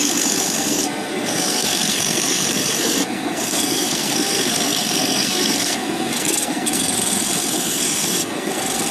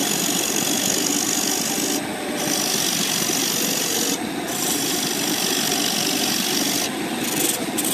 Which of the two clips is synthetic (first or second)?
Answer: first